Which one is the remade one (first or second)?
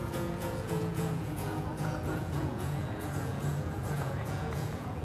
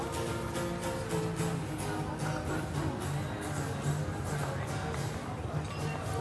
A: first